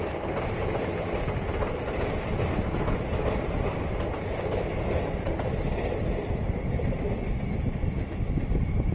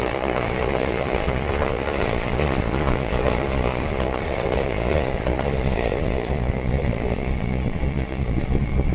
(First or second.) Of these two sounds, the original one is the first